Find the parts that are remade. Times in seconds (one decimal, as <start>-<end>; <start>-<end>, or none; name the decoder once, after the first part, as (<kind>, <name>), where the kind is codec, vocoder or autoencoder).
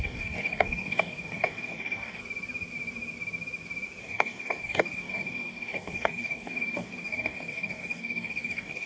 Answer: 0.0-2.2 (codec, DAC); 4.0-8.9